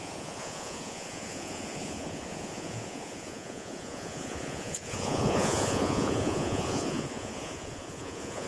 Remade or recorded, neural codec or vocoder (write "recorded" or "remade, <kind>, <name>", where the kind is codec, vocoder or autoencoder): remade, vocoder, Vocos